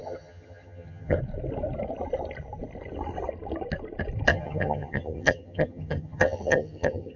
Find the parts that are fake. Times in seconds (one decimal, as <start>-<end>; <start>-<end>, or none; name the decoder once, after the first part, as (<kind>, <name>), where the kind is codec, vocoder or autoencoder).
0.0-1.2 (vocoder, HiFi-GAN); 4.3-7.2